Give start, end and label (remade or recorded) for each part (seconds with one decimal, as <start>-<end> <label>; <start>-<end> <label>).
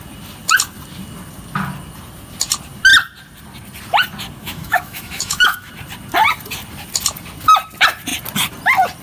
0.0-4.4 recorded; 4.4-5.7 remade; 5.7-9.0 recorded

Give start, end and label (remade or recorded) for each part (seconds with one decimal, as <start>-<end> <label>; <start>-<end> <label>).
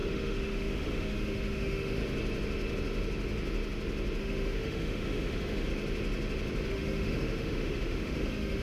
0.0-2.0 remade; 2.0-4.2 recorded; 4.2-5.7 remade; 5.7-6.7 recorded; 6.7-8.6 remade